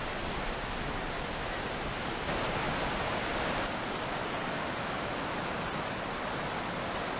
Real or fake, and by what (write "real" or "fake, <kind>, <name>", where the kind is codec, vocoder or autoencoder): real